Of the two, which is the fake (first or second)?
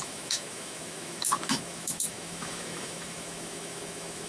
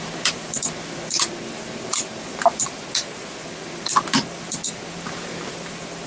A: first